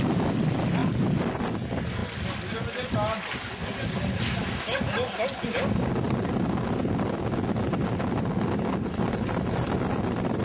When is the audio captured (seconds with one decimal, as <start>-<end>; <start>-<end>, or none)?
0.0-10.4